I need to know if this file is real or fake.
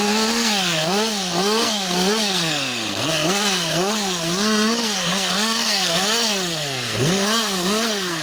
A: fake